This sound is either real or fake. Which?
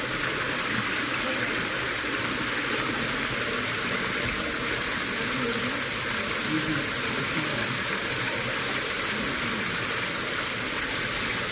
real